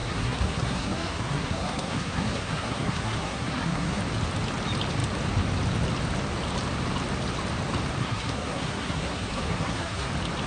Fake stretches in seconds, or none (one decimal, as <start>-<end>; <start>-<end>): 0.0-4.0; 8.0-10.1